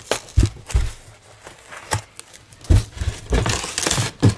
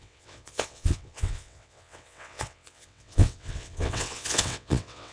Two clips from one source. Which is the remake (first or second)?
second